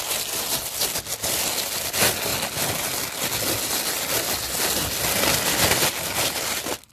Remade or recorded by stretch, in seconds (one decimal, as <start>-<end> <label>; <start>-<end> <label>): 0.0-6.9 recorded